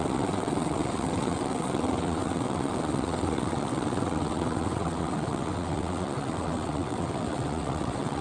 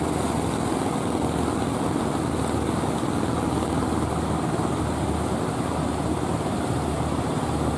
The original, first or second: second